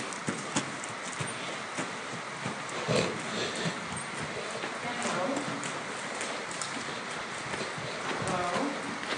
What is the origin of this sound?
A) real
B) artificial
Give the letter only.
A